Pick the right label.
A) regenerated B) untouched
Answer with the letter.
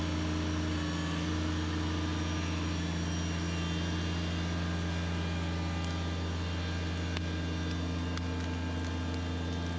B